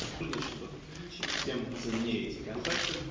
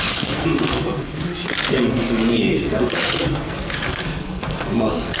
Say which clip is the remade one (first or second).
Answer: second